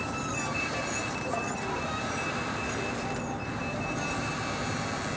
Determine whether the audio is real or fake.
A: real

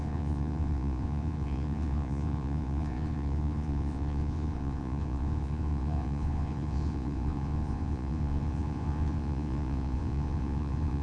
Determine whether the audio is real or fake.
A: fake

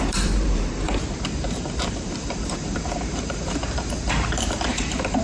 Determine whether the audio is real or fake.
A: fake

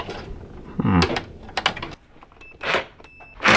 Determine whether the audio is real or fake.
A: real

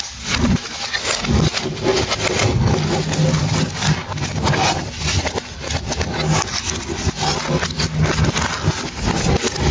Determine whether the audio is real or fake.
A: real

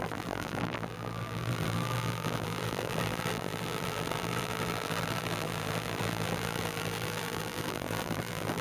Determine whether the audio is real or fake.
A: fake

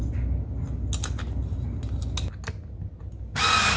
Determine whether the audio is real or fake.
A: real